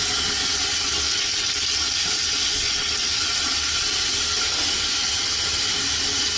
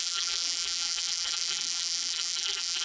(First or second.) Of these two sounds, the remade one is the second